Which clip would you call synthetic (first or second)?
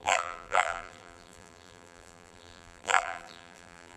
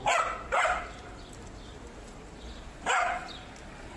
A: first